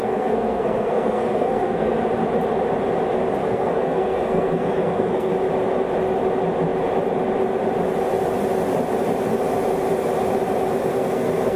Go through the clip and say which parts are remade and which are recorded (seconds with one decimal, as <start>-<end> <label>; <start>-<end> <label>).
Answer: 0.0-2.0 remade; 2.0-3.4 recorded; 3.4-5.3 remade; 5.3-10.9 recorded; 10.9-11.6 remade